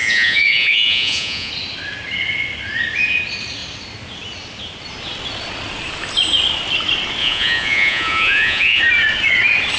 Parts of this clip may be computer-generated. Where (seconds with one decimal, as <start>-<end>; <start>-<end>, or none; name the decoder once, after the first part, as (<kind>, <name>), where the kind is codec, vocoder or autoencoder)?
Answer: 0.0-1.5 (vocoder, Vocos); 7.2-8.8